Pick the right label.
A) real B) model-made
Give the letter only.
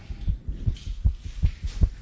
B